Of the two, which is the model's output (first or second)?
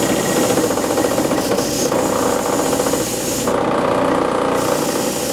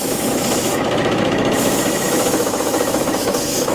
second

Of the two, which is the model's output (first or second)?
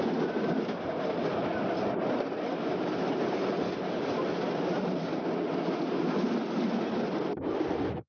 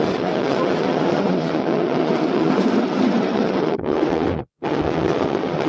second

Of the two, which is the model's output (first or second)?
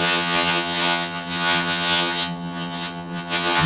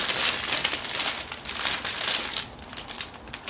first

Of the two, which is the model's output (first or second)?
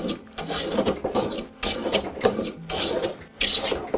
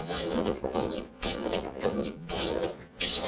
second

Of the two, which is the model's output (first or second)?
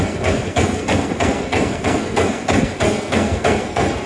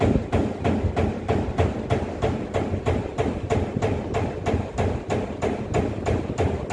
first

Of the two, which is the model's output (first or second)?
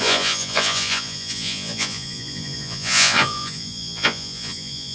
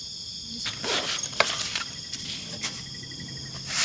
first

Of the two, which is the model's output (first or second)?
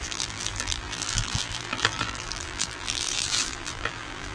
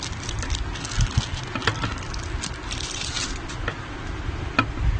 first